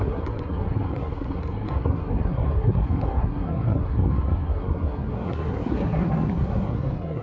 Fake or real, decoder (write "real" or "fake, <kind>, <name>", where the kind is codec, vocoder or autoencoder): fake, codec, SNAC